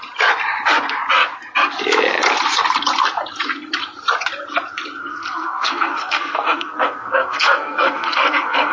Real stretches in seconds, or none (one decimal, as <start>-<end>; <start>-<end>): 0.0-5.0